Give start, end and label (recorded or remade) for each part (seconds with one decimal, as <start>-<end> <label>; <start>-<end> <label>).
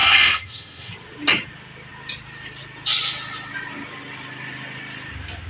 0.0-0.9 remade; 0.9-5.5 recorded